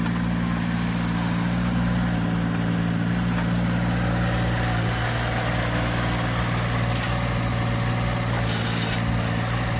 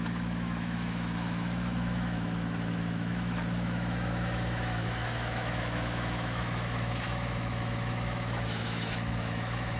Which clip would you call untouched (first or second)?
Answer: first